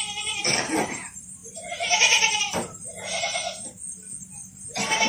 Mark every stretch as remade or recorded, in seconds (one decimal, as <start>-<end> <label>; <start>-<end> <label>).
0.0-5.1 recorded

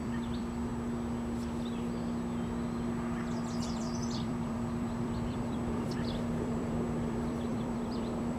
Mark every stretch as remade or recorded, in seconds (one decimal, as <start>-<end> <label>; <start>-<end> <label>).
0.0-0.7 remade; 0.7-3.6 recorded; 3.6-8.4 remade

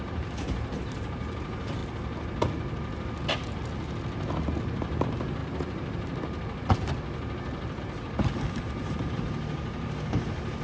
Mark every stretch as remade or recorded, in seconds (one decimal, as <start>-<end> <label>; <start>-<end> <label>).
0.0-1.8 remade; 1.8-5.0 recorded; 5.0-5.4 remade; 5.4-7.8 recorded; 7.8-10.6 remade

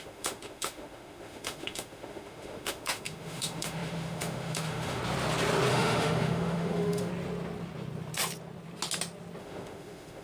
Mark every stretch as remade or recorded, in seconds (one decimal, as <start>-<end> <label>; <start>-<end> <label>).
0.0-5.0 remade; 5.0-5.7 recorded; 5.7-7.1 remade; 7.1-9.4 recorded; 9.4-10.2 remade

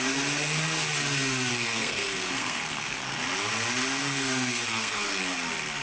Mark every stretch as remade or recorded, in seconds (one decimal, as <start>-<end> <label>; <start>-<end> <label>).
0.0-1.5 recorded; 1.5-3.2 remade; 3.2-4.0 recorded; 4.0-5.2 remade; 5.2-5.8 recorded

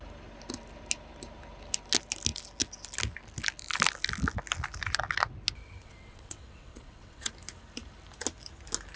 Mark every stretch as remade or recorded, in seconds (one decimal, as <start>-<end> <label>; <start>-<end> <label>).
0.0-5.6 recorded; 5.6-7.3 remade; 7.3-9.0 recorded

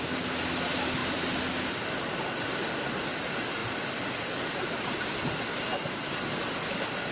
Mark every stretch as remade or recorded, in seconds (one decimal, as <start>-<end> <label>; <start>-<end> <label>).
0.0-7.1 recorded

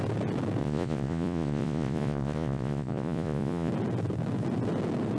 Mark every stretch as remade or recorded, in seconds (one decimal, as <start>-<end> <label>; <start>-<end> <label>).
0.0-0.6 recorded; 0.6-3.7 remade; 3.7-5.2 recorded